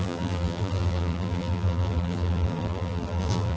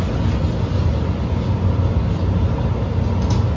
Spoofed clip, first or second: first